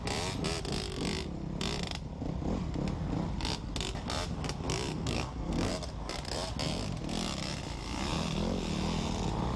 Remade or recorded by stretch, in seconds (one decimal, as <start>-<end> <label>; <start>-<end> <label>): 0.0-4.9 recorded; 4.9-5.7 remade; 5.7-9.6 recorded